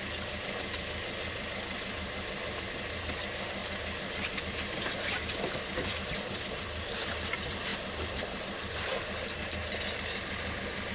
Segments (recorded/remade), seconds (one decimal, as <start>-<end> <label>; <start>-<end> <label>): 0.0-3.6 remade; 3.6-4.4 recorded; 4.4-10.9 remade